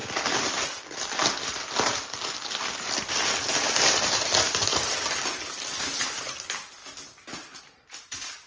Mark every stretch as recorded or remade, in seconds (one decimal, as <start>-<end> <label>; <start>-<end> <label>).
0.0-4.0 recorded; 4.0-6.8 remade; 6.8-7.6 recorded; 7.6-8.5 remade